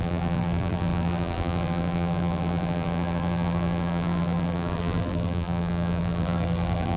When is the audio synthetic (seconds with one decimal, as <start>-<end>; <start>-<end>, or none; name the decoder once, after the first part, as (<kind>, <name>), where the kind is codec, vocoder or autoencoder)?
0.0-7.0 (vocoder, BigVGAN v2)